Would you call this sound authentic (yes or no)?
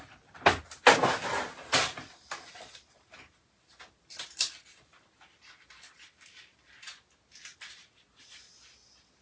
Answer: yes